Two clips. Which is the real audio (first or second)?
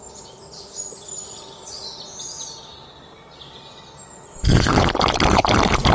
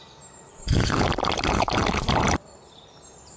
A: first